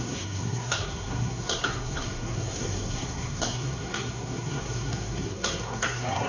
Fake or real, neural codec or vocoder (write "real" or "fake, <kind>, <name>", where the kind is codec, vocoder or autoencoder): fake, codec, SNAC